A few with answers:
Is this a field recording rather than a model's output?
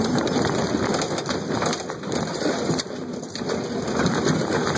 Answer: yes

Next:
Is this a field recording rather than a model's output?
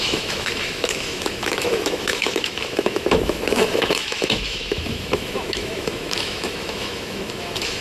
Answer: no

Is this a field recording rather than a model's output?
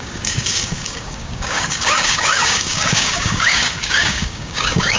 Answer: no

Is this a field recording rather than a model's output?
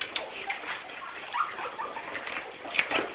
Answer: yes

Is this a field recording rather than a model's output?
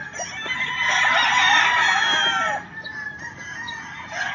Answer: yes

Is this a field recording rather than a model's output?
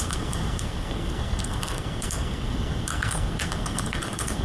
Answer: no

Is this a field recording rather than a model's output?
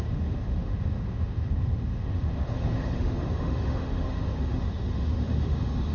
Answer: no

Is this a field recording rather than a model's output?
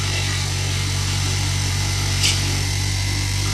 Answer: no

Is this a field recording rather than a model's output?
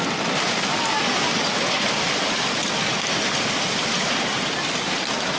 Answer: yes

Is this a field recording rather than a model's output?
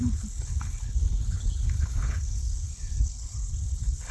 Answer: no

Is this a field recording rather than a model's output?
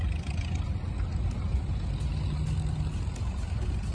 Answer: yes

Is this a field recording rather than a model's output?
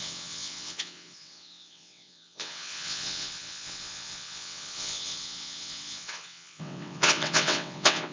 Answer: no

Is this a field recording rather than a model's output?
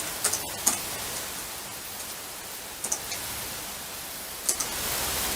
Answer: yes